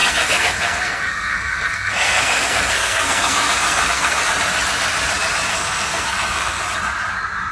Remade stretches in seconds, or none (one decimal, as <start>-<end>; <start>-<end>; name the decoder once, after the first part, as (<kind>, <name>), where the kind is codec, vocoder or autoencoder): 0.0-4.2 (codec, SNAC); 5.5-6.6